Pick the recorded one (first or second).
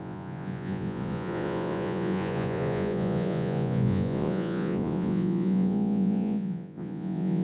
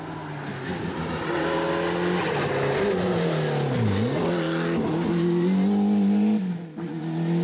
second